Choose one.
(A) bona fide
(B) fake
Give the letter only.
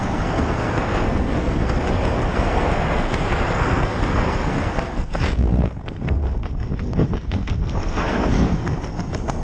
B